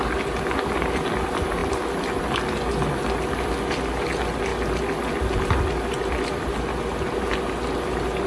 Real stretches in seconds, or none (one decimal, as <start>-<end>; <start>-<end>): 0.0-8.3